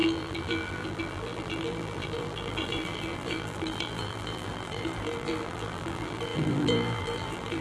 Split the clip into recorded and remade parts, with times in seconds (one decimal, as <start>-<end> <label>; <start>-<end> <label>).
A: 0.0-7.6 remade